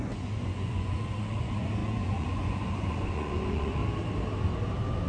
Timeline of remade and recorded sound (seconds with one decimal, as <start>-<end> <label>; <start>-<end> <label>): 0.0-3.8 remade; 3.8-5.1 recorded